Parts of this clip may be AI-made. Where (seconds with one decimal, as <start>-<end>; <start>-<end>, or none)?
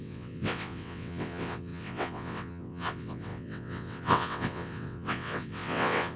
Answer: 0.0-6.2